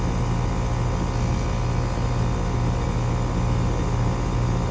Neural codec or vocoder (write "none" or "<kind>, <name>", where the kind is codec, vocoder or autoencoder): none